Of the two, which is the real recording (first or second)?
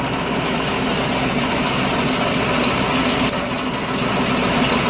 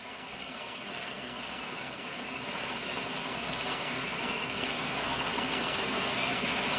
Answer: first